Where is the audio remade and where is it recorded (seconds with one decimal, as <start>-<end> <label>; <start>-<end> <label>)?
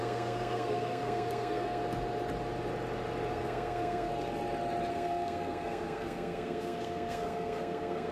0.0-1.8 remade; 1.8-3.3 recorded; 3.3-4.1 remade; 4.1-4.9 recorded; 4.9-8.1 remade